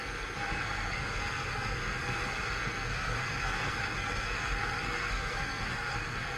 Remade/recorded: remade